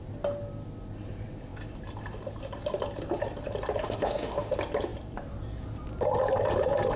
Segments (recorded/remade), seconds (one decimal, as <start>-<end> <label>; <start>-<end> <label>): 0.0-3.8 recorded; 3.8-4.5 remade; 4.5-7.0 recorded